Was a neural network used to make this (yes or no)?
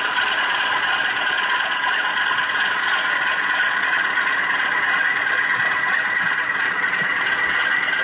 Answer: yes